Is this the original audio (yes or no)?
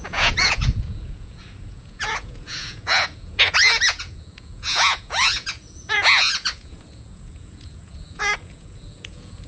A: no